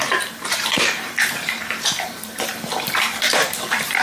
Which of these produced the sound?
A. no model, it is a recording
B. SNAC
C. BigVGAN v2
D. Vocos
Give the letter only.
C